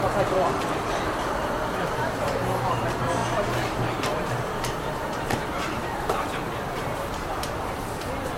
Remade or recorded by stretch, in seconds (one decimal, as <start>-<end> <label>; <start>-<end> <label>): 0.0-8.4 remade